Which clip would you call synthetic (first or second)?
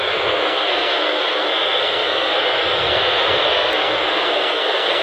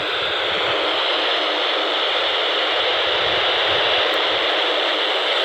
first